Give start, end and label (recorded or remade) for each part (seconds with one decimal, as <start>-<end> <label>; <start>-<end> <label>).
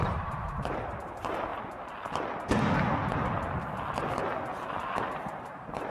0.0-1.5 remade; 1.5-5.0 recorded; 5.0-5.9 remade